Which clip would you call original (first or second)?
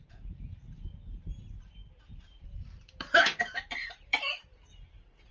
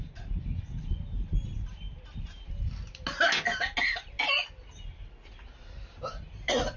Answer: second